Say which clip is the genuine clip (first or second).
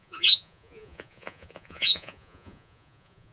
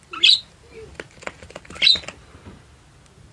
second